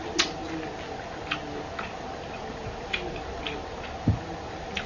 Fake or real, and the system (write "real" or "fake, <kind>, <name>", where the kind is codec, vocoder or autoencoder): real